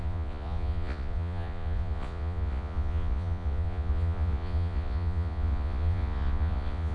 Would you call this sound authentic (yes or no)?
no